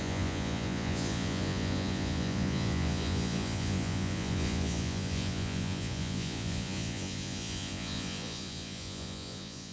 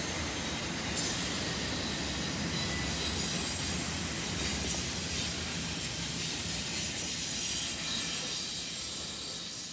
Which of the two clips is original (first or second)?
second